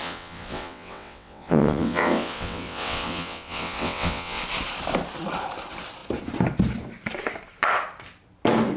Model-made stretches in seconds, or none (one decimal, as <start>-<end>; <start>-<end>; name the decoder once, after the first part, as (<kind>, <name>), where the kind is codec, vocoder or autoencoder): 0.0-4.4 (vocoder, WaveNeXt)